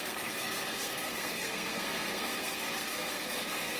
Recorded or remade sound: remade